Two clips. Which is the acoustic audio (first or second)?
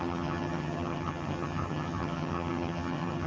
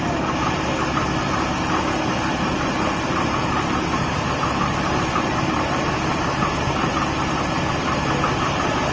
second